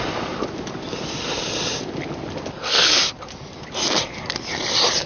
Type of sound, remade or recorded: remade